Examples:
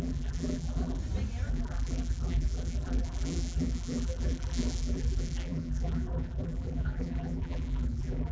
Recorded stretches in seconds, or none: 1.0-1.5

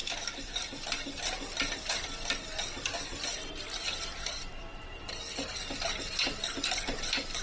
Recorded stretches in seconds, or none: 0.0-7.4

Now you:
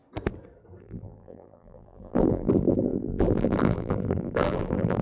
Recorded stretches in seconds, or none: 0.0-0.8

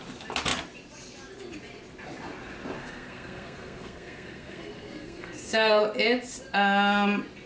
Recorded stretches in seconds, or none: 0.0-2.8; 5.8-7.5

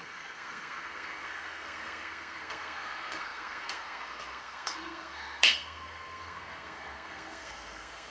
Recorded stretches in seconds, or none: none

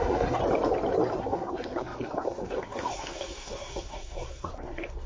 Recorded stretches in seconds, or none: 0.4-1.2

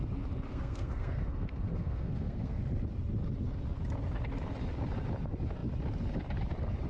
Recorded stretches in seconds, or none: 0.0-0.5; 2.6-6.9

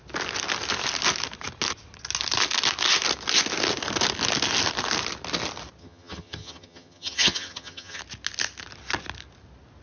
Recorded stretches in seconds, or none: 0.0-5.8; 8.0-9.8